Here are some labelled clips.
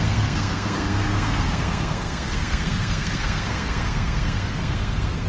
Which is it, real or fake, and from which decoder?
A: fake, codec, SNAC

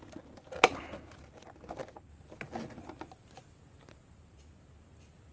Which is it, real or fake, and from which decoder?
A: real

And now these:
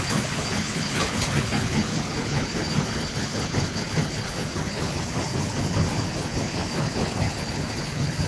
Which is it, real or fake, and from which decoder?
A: fake, codec, HILCodec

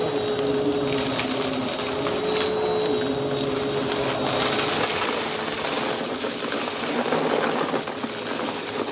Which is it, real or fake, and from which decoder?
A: real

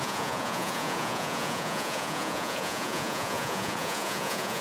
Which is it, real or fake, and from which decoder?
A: fake, vocoder, Vocos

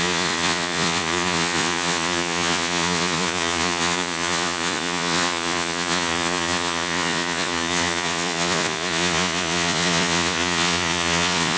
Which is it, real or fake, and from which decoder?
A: fake, vocoder, Vocos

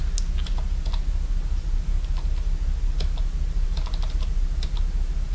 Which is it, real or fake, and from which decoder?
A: real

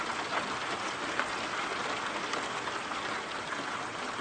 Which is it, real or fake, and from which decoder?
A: real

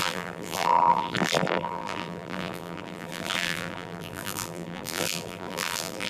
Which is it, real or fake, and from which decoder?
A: fake, vocoder, BigVGAN v2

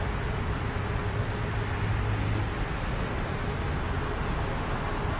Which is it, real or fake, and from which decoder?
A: real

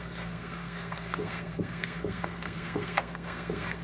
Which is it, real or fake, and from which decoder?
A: fake, codec, SNAC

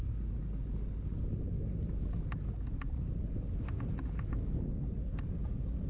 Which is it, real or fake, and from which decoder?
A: real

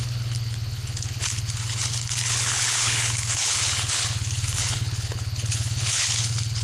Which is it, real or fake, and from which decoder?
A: fake, codec, HILCodec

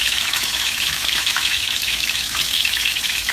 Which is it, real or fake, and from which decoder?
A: fake, autoencoder, DAC-VAE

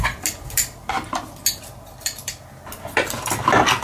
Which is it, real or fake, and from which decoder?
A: real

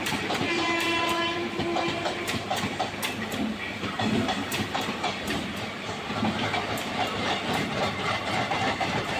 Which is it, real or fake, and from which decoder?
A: fake, vocoder, BigVGAN v2